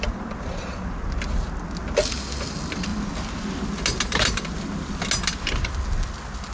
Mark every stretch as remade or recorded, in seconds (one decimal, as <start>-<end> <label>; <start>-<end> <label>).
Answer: 0.0-6.5 recorded